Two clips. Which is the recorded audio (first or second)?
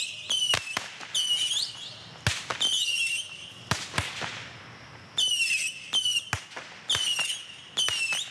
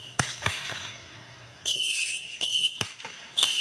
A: first